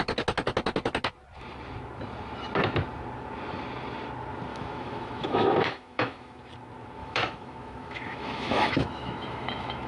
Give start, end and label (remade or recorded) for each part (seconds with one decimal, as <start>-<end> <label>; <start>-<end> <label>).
0.0-4.5 recorded; 4.5-6.4 remade; 6.4-7.0 recorded; 7.0-9.9 remade